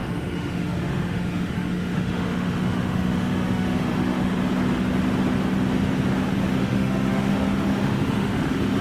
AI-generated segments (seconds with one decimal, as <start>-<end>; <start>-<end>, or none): 0.0-4.3; 6.6-8.8